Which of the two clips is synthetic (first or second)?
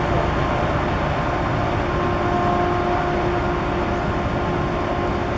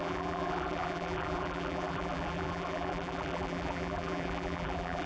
second